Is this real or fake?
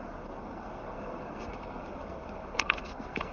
fake